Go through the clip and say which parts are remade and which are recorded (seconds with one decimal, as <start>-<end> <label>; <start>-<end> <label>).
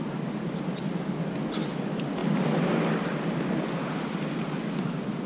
0.0-5.3 recorded